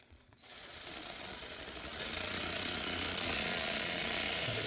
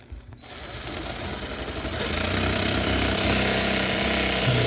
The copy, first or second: first